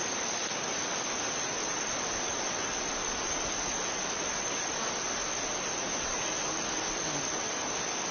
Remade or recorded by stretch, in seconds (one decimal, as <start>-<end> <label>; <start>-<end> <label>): 0.0-8.1 recorded